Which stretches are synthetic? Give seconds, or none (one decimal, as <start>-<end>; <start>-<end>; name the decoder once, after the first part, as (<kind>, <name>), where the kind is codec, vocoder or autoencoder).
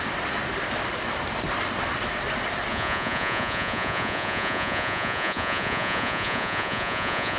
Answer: 2.7-7.4 (vocoder, Vocos)